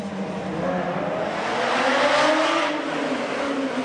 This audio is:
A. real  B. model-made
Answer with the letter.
A